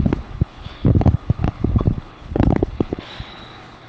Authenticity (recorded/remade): remade